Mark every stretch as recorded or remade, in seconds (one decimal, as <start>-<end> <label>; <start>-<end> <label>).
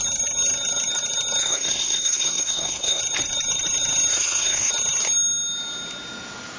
0.0-1.4 recorded; 1.4-3.0 remade; 3.0-4.1 recorded; 4.1-4.7 remade; 4.7-6.6 recorded